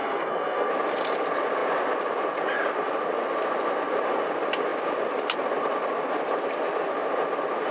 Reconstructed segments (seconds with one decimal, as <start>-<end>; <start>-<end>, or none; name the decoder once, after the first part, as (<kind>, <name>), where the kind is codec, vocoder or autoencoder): 0.0-0.7 (codec, SNAC)